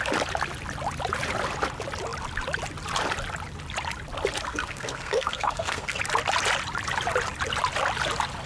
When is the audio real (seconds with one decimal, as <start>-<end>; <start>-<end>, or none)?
0.0-4.5; 6.0-8.5